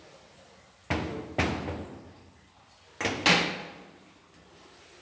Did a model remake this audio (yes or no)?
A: no